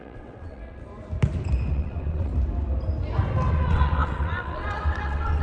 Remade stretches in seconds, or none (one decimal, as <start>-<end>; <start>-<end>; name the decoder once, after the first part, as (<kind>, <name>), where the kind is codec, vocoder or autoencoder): 0.0-0.9 (vocoder, WaveNeXt); 1.7-2.3; 3.5-5.4